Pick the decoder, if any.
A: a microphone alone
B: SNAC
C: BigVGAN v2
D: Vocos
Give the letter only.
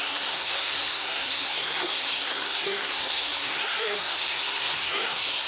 B